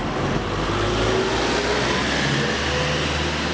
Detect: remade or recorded recorded